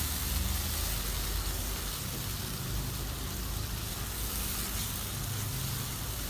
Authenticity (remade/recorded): recorded